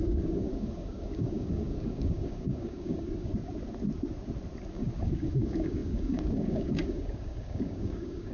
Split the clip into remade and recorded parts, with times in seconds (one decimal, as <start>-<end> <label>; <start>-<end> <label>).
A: 0.0-3.3 remade; 3.3-4.7 recorded; 4.7-8.3 remade